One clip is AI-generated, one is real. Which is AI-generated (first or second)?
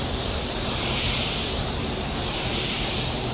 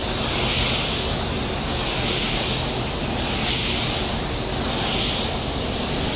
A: first